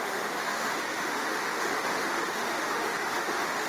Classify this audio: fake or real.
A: fake